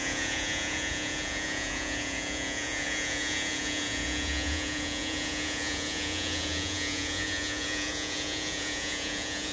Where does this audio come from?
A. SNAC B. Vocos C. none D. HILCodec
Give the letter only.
B